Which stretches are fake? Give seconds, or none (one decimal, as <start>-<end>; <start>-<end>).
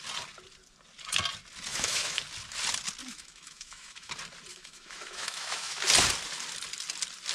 1.7-2.2; 3.0-4.1; 4.5-5.8